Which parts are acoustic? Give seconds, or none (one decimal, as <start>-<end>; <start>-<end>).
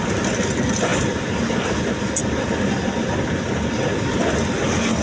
0.0-5.0